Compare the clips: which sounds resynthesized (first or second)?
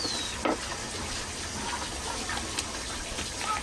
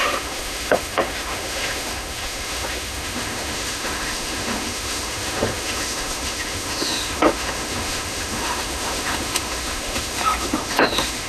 second